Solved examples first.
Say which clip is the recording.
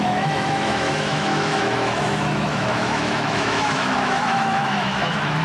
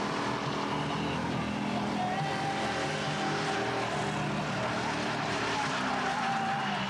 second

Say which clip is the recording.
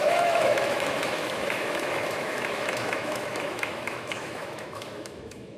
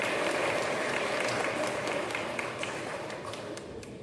second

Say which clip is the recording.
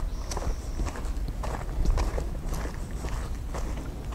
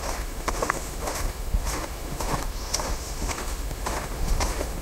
first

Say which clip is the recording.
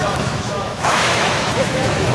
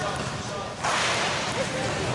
second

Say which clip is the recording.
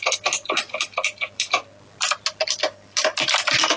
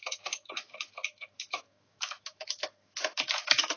first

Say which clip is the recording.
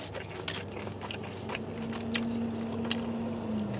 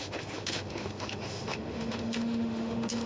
first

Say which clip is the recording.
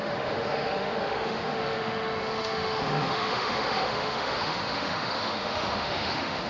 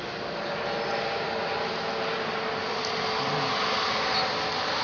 second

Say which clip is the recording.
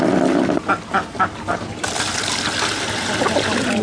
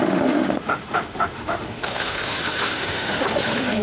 first